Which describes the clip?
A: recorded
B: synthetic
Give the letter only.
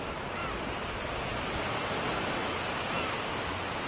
A